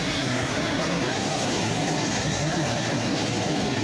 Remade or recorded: remade